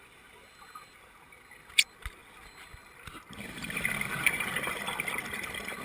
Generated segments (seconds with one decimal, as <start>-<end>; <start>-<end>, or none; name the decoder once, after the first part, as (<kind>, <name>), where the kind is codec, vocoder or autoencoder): none

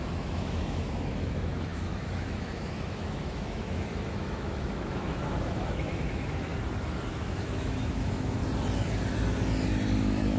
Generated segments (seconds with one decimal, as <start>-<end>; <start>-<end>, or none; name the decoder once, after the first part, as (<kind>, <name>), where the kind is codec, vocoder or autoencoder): 0.0-6.5 (autoencoder, DAC-VAE); 7.1-8.4; 10.0-10.4

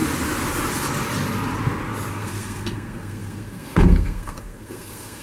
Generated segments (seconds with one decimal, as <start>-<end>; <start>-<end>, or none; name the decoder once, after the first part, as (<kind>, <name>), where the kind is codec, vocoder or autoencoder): 2.1-5.2 (codec, SNAC)

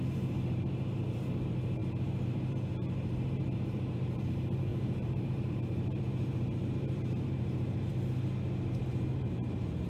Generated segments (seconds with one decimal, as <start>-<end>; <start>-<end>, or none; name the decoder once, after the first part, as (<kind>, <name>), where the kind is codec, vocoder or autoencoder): 0.0-7.9 (vocoder, BigVGAN v2); 8.8-9.9

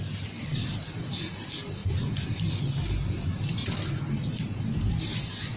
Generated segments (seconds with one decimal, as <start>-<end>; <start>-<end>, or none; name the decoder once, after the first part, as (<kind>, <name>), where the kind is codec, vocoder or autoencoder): 0.5-1.1 (vocoder, BigVGAN v2)

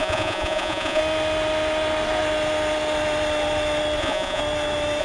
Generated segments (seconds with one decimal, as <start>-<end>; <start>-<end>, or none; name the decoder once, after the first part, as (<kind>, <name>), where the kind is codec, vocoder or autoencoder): 0.0-1.0 (vocoder, Vocos); 4.0-4.4

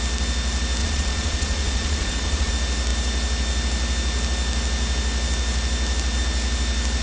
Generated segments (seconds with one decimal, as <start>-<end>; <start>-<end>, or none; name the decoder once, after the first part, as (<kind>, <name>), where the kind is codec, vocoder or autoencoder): 0.8-2.5 (vocoder, Vocos)